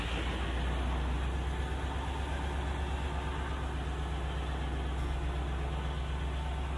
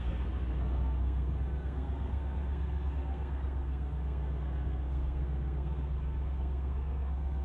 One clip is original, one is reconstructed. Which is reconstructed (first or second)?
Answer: second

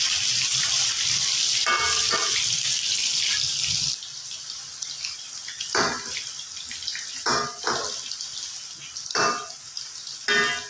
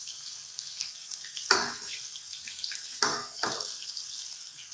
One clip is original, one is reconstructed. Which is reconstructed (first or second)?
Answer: second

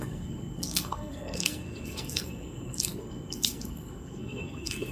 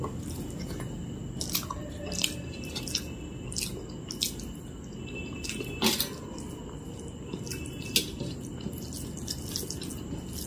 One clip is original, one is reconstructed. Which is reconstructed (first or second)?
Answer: first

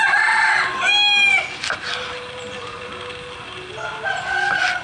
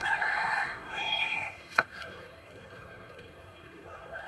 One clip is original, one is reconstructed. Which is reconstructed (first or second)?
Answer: second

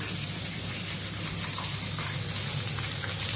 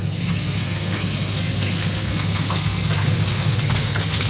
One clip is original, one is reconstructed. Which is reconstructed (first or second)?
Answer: second